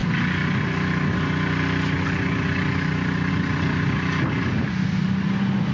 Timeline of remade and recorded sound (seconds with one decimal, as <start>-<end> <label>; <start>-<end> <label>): 0.0-5.7 recorded

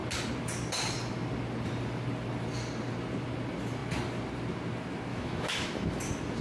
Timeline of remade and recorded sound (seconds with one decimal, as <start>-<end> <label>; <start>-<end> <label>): 0.0-5.1 recorded; 5.1-6.0 remade; 6.0-6.4 recorded

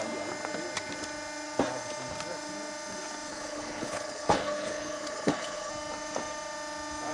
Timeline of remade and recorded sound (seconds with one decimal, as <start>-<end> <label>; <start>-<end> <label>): 0.0-3.3 recorded; 3.3-5.7 remade; 5.7-7.1 recorded